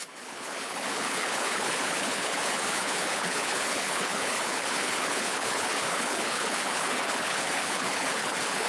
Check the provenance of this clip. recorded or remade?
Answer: remade